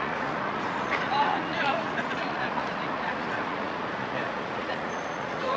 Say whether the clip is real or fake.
fake